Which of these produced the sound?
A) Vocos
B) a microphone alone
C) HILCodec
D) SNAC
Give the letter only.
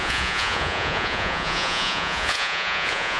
A